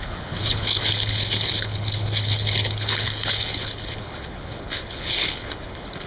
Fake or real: fake